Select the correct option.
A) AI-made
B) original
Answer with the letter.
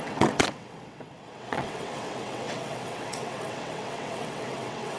A